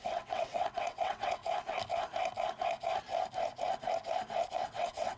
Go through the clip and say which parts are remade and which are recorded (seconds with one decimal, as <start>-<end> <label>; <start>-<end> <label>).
0.0-1.4 remade; 1.4-4.5 recorded; 4.5-5.2 remade